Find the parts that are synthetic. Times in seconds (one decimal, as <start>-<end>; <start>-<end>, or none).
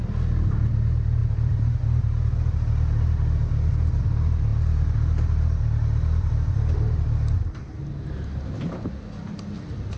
none